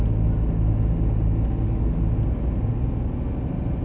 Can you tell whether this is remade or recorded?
recorded